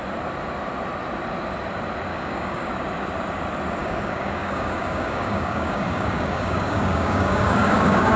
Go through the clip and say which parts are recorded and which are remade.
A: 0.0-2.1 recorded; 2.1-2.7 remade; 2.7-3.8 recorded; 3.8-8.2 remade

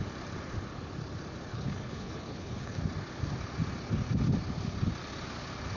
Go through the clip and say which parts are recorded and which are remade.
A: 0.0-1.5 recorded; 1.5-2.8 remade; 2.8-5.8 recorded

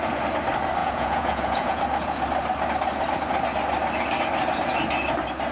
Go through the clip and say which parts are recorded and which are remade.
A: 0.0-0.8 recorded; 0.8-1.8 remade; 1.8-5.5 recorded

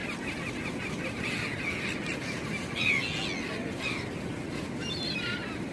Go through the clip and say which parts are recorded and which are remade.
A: 0.0-5.7 recorded

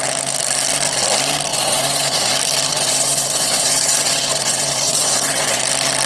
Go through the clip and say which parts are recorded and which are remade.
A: 0.0-1.5 recorded; 1.5-2.3 remade; 2.3-2.7 recorded; 2.7-5.6 remade; 5.6-6.1 recorded

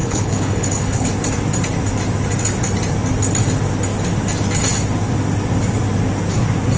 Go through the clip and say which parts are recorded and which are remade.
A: 0.0-1.1 remade; 1.1-6.8 recorded

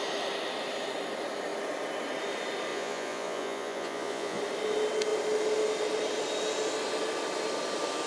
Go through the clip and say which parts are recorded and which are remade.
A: 0.0-2.7 recorded; 2.7-4.4 remade; 4.4-8.1 recorded

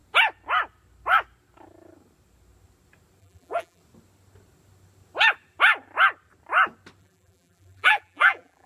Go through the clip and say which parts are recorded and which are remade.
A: 0.0-3.2 recorded; 3.2-3.8 remade; 3.8-7.0 recorded; 7.0-8.7 remade